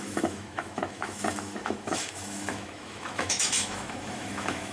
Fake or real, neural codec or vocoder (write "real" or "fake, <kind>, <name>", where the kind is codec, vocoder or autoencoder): fake, autoencoder, DAC-VAE